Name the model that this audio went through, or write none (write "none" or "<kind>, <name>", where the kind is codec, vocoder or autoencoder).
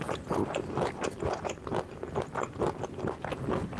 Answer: none